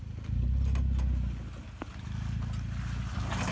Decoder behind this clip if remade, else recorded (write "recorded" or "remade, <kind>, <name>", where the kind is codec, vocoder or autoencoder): recorded